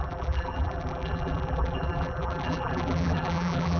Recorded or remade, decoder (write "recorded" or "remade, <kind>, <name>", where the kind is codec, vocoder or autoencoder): remade, vocoder, BigVGAN v2